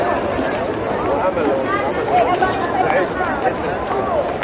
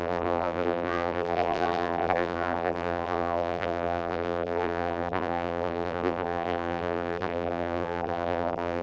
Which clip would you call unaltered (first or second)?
first